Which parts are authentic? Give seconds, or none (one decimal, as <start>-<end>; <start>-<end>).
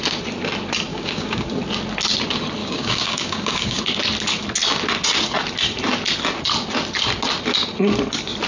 0.0-0.9; 1.5-2.6; 3.8-8.5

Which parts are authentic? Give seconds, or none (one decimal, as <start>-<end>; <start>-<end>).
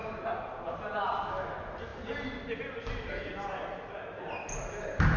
0.0-5.2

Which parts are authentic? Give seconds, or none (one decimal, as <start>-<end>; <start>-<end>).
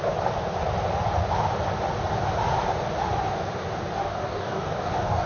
0.0-4.0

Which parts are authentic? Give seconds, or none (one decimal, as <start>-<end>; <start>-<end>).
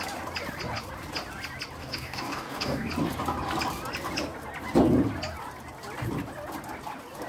0.0-1.8; 2.9-7.3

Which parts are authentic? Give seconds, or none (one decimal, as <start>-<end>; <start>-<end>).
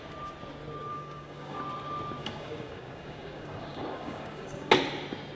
0.0-0.9; 1.6-2.2; 4.7-5.4